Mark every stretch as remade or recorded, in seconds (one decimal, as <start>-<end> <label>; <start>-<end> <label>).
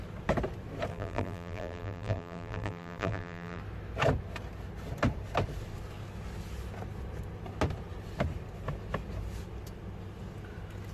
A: 0.0-0.9 recorded; 0.9-3.6 remade; 3.6-10.9 recorded